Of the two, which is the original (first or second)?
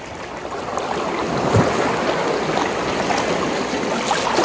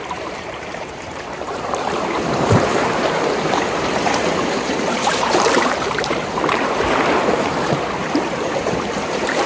first